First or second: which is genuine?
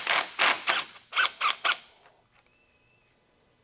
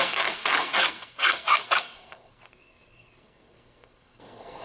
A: first